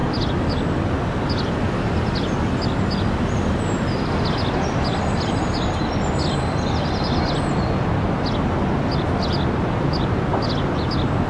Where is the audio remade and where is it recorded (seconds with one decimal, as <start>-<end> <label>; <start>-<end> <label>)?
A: 0.0-11.3 recorded